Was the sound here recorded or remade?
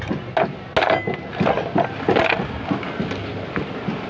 recorded